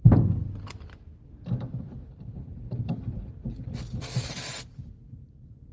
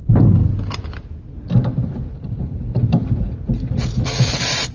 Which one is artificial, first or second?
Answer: first